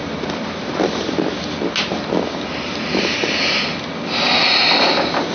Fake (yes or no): no